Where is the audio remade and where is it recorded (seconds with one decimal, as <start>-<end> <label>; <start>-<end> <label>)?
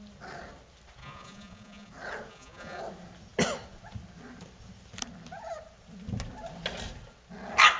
0.0-1.0 recorded; 1.0-1.9 remade; 1.9-2.3 recorded; 2.3-2.8 remade; 2.8-7.8 recorded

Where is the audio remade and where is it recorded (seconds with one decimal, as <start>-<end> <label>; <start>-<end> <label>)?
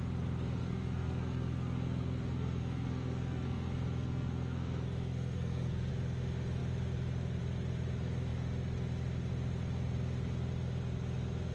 0.0-0.6 recorded; 0.6-5.9 remade; 5.9-11.5 recorded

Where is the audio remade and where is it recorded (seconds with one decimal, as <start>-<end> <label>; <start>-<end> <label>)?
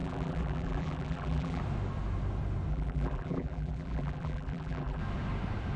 0.0-1.6 remade; 1.6-2.7 recorded; 2.7-5.0 remade; 5.0-5.8 recorded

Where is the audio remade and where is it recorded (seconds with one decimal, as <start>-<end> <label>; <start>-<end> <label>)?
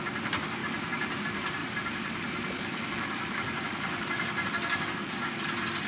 0.0-0.6 recorded; 0.6-1.2 remade; 1.2-1.6 recorded; 1.6-5.1 remade; 5.1-5.9 recorded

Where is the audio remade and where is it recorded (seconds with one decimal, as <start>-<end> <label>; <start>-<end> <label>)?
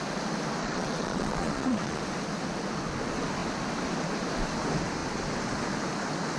0.0-0.6 recorded; 0.6-2.0 remade; 2.0-6.4 recorded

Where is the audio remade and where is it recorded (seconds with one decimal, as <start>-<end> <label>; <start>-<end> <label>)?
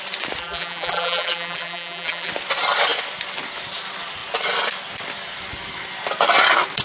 0.0-0.4 recorded; 0.4-2.3 remade; 2.3-6.8 recorded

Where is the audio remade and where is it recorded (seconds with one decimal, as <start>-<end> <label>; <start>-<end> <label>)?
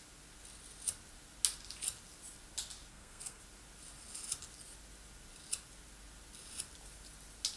0.0-2.9 recorded; 2.9-3.4 remade; 3.4-7.6 recorded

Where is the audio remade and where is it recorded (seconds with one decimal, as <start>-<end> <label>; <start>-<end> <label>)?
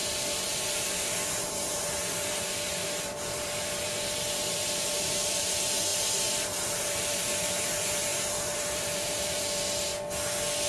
0.0-9.9 remade; 9.9-10.7 recorded